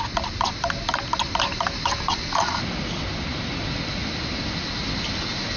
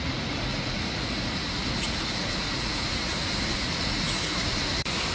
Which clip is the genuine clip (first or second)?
first